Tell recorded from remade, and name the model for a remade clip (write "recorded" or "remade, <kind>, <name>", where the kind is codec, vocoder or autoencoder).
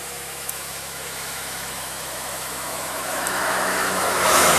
remade, autoencoder, DAC-VAE